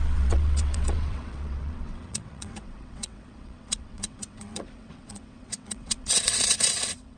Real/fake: fake